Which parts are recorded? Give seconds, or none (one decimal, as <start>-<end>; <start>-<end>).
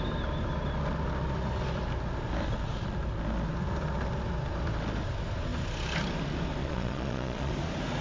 0.0-6.6; 7.5-8.0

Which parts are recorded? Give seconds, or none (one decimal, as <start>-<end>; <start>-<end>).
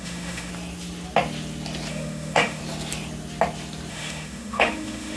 0.5-1.9; 2.6-3.9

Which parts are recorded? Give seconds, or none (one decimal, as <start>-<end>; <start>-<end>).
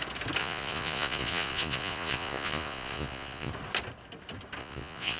0.0-0.4; 3.5-4.6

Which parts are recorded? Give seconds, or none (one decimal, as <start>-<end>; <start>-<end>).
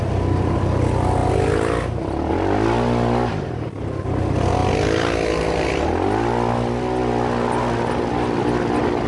0.0-9.1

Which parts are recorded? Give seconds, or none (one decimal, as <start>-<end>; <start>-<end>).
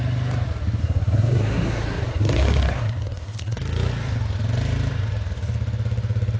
0.0-0.8; 3.6-6.4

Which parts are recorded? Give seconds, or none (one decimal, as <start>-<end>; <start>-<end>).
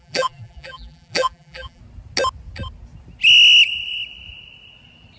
1.8-5.2